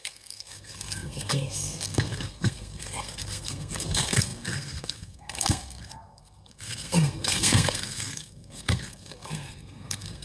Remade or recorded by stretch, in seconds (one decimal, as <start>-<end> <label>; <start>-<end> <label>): 0.0-10.2 remade